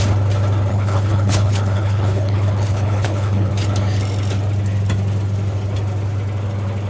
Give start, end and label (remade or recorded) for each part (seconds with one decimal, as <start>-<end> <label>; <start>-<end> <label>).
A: 0.0-0.7 recorded; 0.7-3.5 remade; 3.5-6.9 recorded